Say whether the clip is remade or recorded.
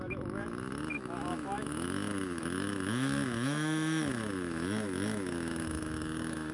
remade